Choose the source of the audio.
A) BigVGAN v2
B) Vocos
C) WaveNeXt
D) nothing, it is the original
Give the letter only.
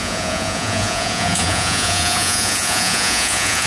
B